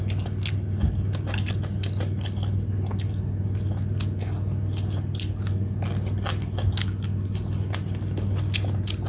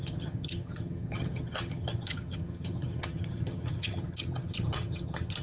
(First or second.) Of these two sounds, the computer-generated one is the second